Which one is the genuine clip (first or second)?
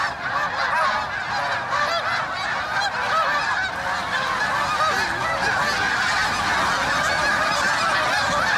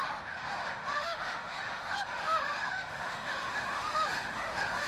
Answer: first